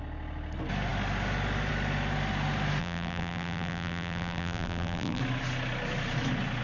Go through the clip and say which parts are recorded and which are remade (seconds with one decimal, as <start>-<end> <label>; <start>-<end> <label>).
0.0-2.8 recorded; 2.8-5.2 remade; 5.2-6.6 recorded